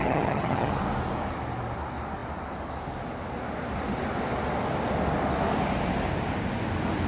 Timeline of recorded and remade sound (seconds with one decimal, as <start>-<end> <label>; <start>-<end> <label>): 0.0-0.7 remade; 0.7-7.1 recorded

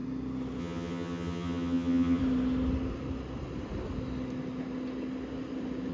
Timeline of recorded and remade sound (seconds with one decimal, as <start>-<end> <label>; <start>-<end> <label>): 0.0-0.6 recorded; 0.6-2.2 remade; 2.2-5.9 recorded

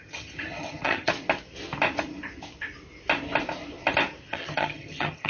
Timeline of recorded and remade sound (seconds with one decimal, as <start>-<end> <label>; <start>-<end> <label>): 0.0-1.1 remade; 1.1-4.3 recorded; 4.3-5.3 remade